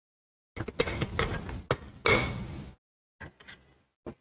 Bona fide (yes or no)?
yes